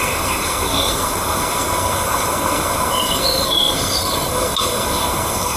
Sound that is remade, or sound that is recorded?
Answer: remade